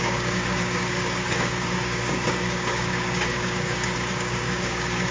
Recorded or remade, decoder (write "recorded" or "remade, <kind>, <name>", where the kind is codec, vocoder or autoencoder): remade, codec, DAC